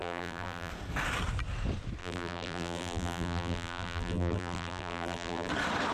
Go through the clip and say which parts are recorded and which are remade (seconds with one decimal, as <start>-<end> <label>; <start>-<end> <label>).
0.0-0.7 remade; 0.7-2.0 recorded; 2.0-5.5 remade; 5.5-5.9 recorded